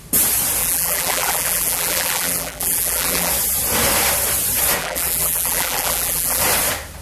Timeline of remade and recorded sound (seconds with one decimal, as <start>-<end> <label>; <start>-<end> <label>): 0.0-0.6 recorded; 0.6-3.3 remade; 3.3-4.8 recorded; 4.8-6.4 remade; 6.4-7.0 recorded